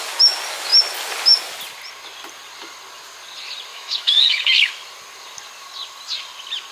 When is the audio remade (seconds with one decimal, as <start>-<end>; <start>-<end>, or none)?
3.7-4.7